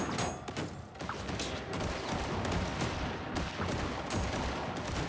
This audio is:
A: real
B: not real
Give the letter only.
A